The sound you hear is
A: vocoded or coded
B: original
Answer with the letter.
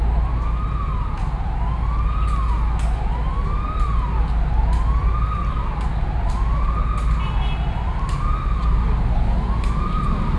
B